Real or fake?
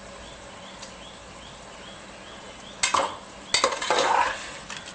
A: real